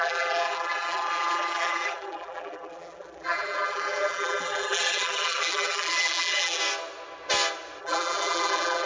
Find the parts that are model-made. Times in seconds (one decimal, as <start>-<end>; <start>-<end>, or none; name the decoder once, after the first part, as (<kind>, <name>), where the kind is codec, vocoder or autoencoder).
0.0-6.6 (vocoder, BigVGAN v2); 7.8-8.9